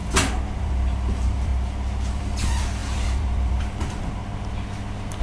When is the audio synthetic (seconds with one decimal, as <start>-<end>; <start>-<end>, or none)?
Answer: 0.6-1.5; 2.1-4.2